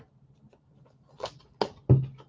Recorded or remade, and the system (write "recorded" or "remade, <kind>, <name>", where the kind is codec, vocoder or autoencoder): recorded